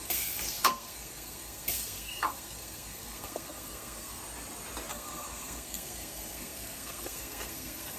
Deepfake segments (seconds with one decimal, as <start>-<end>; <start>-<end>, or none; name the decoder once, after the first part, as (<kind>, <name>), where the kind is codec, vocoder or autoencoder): 0.0-4.2 (codec, SNAC); 4.9-8.0